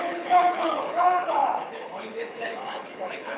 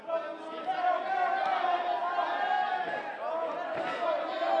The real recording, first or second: second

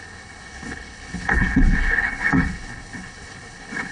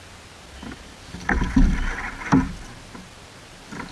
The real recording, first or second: second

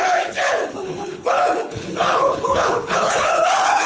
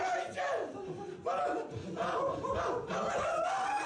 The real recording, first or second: second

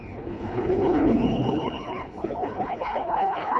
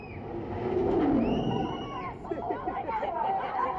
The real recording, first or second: second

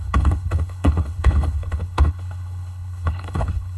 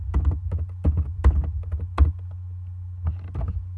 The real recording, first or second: second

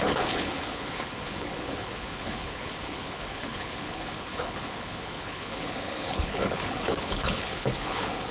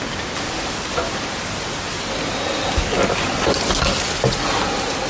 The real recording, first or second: second